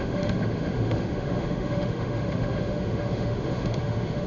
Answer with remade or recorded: remade